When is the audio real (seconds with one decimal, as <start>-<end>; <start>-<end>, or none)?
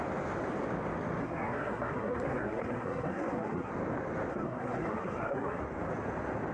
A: 0.0-1.2; 3.7-4.3; 5.6-6.5